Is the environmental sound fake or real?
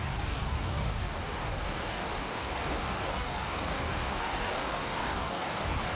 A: fake